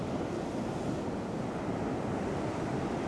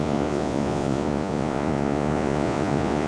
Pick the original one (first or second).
first